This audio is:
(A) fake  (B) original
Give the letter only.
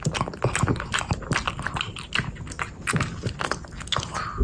B